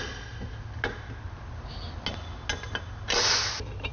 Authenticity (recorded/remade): recorded